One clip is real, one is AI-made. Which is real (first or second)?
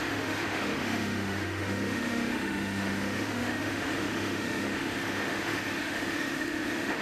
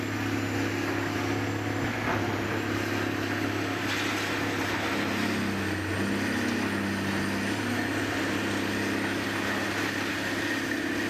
second